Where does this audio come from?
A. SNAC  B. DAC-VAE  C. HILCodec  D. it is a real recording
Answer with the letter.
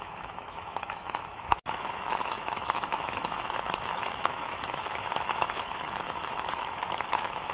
B